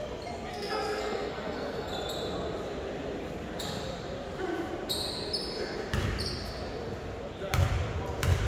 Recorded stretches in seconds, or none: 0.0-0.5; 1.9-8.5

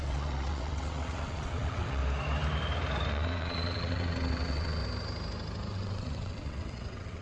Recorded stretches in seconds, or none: 2.0-3.1; 4.8-5.7

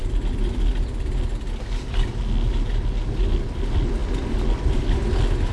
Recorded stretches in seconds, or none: 0.0-5.5

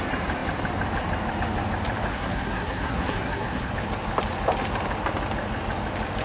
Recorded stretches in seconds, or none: 0.0-2.1; 3.7-6.2

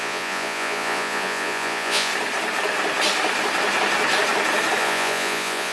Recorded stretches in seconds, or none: 2.1-4.8